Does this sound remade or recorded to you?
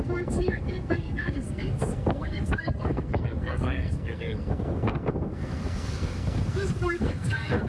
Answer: remade